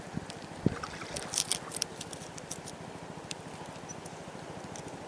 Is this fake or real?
fake